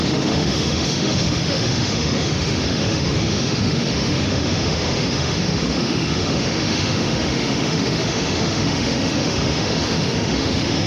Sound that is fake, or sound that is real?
fake